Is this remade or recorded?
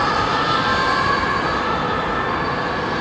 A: recorded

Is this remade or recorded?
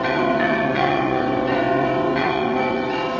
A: remade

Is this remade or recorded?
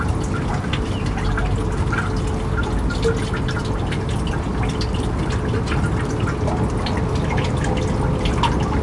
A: recorded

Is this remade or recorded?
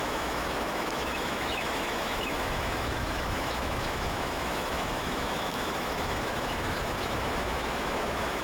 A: remade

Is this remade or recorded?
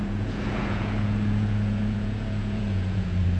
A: remade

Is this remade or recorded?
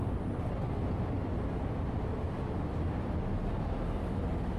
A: recorded